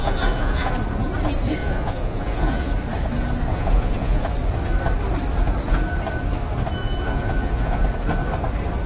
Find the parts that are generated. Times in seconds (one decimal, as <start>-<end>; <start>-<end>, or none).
0.0-0.7; 1.6-2.7; 3.5-4.2; 6.8-7.8